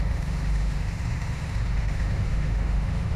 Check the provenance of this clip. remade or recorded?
remade